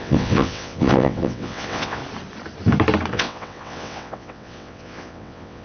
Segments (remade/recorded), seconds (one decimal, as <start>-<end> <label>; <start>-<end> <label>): 0.0-2.0 remade; 2.0-3.1 recorded; 3.1-5.6 remade